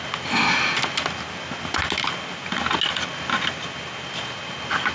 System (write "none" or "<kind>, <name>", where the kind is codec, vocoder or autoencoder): none